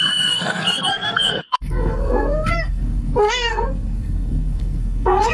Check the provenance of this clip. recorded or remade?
remade